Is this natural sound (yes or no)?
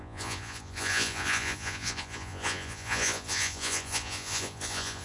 no